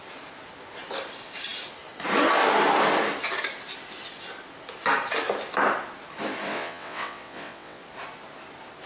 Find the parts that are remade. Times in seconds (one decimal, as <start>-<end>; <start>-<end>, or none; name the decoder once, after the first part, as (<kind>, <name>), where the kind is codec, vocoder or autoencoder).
6.5-7.8 (vocoder, WaveNeXt)